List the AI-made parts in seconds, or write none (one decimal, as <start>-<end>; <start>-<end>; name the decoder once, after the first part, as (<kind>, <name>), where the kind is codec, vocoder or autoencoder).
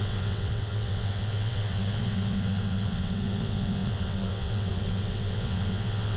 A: 0.0-6.2 (vocoder, WaveNeXt)